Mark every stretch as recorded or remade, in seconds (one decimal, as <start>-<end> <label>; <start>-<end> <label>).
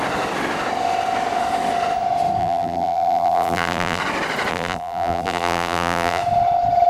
0.0-2.4 recorded; 2.4-4.0 remade; 4.0-4.5 recorded; 4.5-6.2 remade; 6.2-6.9 recorded